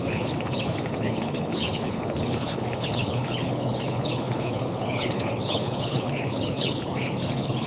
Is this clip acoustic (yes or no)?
no